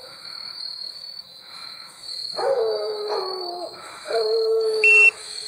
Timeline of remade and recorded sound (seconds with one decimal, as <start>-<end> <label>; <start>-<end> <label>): 0.0-5.5 remade